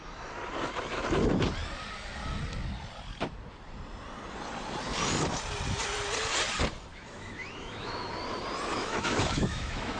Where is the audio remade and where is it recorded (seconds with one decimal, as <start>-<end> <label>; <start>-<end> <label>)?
0.0-6.9 recorded; 6.9-8.1 remade; 8.1-8.7 recorded; 8.7-10.0 remade